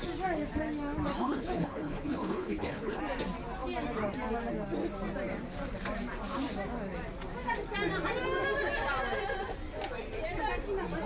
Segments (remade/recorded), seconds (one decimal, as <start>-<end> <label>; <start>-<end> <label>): 0.0-1.2 recorded; 1.2-3.0 remade; 3.0-11.1 recorded